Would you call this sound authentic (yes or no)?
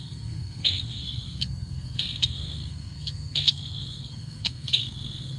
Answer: no